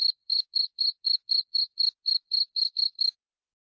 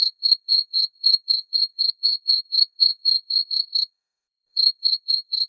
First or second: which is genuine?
first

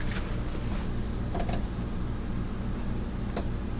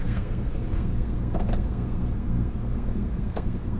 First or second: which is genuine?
first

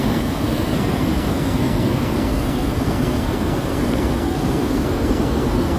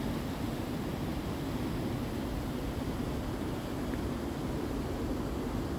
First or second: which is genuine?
second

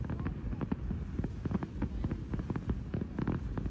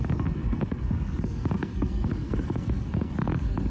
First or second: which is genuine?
first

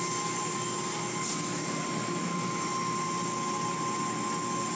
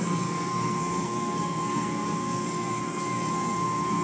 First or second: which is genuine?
first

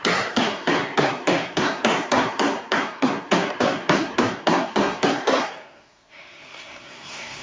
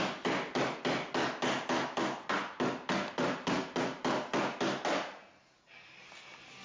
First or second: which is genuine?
second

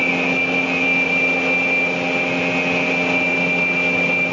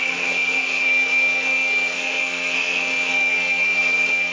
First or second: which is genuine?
first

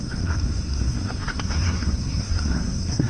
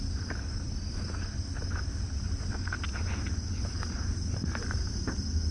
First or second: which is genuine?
second